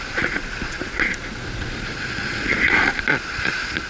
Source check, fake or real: fake